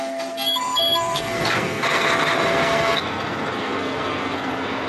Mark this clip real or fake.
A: fake